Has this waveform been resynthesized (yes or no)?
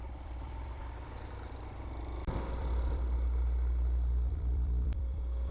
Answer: yes